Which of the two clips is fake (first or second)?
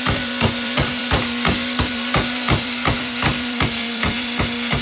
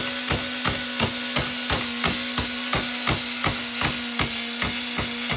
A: first